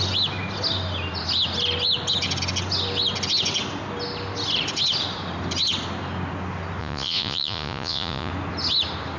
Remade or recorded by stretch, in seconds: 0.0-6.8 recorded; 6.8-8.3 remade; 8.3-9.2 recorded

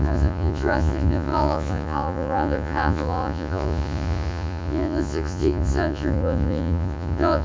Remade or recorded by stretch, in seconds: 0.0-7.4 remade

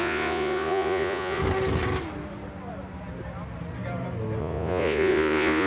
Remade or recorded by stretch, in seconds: 0.0-1.4 remade; 1.4-4.4 recorded; 4.4-5.7 remade